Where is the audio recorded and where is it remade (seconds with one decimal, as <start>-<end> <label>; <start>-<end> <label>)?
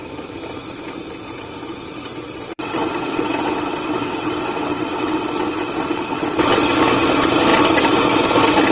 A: 0.0-2.1 recorded; 2.1-6.5 remade; 6.5-8.7 recorded